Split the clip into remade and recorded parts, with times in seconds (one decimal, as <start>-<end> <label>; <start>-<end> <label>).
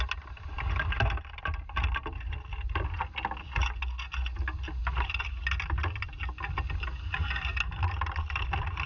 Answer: 0.0-8.9 recorded